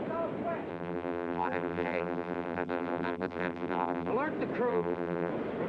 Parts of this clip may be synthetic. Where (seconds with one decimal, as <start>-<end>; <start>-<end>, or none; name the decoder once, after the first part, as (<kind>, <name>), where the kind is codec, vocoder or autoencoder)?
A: 0.7-4.1 (vocoder, BigVGAN v2); 4.7-5.3